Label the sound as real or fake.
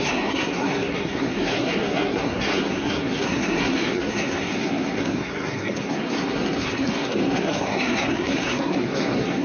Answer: fake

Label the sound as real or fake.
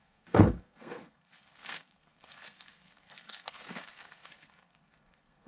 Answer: fake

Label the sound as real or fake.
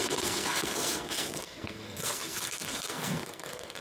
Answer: fake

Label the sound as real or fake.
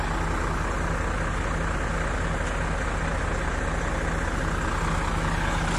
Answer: real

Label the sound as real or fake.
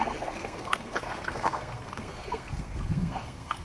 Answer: fake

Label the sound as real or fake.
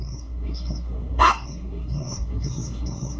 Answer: fake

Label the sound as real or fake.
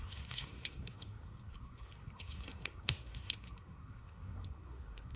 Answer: fake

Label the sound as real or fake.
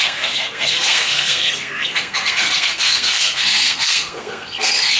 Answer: fake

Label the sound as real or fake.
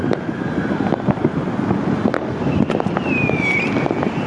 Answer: real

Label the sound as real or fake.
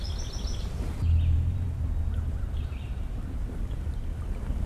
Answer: real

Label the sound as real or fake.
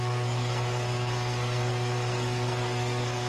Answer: fake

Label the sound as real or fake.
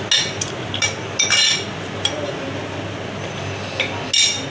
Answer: real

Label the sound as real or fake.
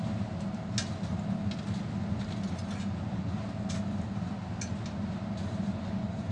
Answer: real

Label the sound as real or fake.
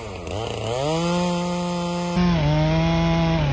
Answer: real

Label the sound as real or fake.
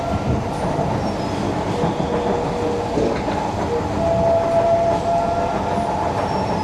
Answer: real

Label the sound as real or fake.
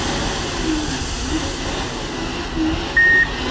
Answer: real